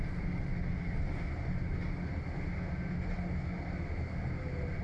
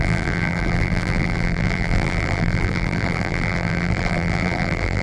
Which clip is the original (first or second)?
first